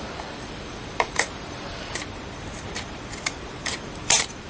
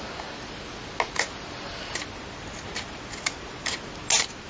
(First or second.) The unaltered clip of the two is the second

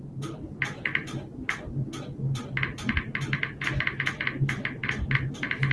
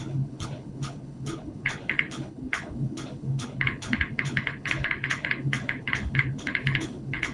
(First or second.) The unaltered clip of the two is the first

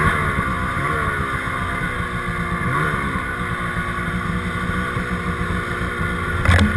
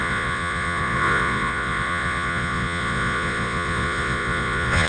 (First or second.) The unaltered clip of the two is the first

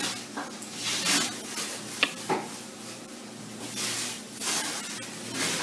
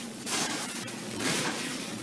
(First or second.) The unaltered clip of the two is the first